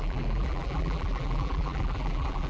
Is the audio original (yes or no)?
no